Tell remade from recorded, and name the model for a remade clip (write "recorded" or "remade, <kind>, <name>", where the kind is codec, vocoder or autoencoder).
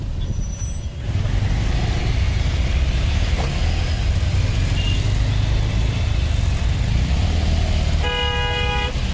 recorded